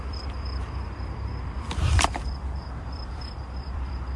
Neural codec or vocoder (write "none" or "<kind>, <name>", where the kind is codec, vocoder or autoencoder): vocoder, BigVGAN v2